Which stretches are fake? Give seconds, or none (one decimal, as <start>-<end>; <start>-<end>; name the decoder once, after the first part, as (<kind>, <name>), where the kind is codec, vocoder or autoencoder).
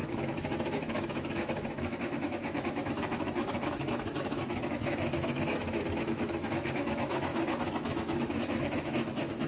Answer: 0.0-9.5 (autoencoder, DAC-VAE)